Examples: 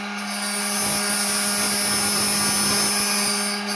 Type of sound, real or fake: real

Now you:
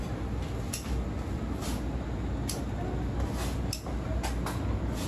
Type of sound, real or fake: real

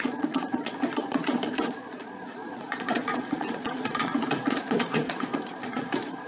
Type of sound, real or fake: fake